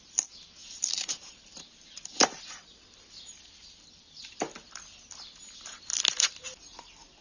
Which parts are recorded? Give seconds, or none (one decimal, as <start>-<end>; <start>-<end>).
0.0-7.2